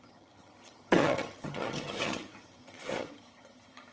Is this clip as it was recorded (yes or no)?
no